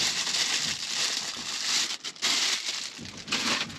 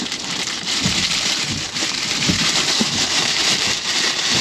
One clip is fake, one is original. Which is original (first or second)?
first